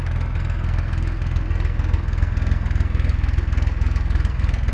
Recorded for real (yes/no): no